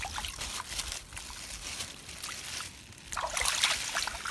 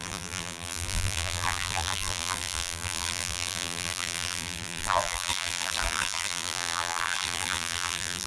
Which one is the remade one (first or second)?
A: second